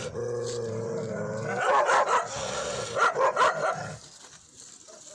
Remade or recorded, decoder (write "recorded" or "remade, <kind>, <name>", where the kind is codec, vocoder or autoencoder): recorded